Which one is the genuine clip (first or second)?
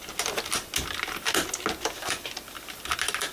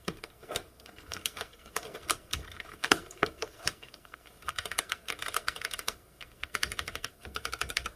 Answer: first